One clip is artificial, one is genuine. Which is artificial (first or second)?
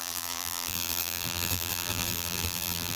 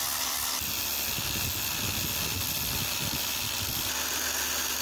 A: first